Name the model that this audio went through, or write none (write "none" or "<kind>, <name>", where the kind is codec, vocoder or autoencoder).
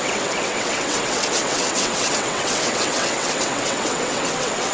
vocoder, WaveNeXt